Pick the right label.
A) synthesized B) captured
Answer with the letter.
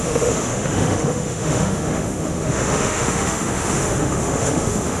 A